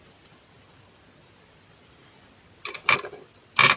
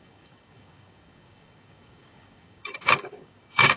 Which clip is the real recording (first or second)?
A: first